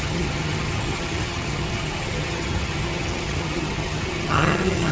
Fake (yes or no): yes